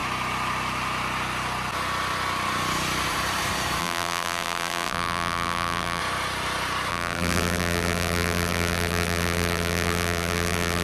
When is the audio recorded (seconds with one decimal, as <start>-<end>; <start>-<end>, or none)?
0.0-3.8; 6.0-6.9